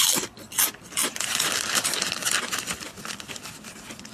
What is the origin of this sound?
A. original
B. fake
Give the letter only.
B